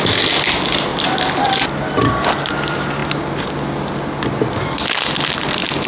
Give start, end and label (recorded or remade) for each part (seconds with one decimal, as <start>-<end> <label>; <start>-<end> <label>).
0.0-5.9 recorded